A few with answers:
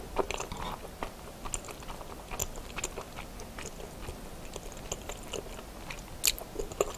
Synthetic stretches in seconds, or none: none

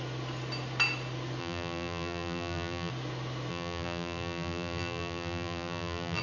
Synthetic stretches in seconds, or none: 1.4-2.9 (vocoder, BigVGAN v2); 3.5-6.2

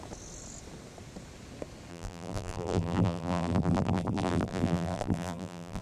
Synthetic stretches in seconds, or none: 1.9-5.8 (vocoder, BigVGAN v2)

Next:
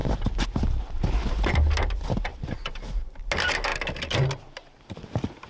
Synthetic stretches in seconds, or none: 0.0-0.8 (vocoder, BigVGAN v2); 2.3-3.2

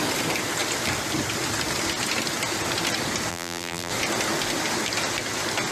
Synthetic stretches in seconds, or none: 3.3-3.9 (vocoder, BigVGAN v2)

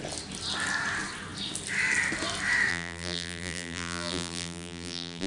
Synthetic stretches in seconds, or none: 2.7-5.3 (vocoder, BigVGAN v2)

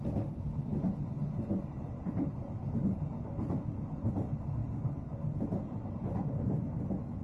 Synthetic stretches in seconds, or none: 4.6-5.9 (vocoder, BigVGAN v2)

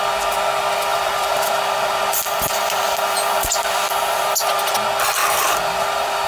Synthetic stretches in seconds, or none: 0.9-4.7 (vocoder, BigVGAN v2); 5.2-6.3